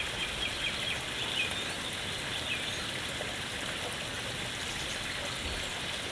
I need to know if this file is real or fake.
real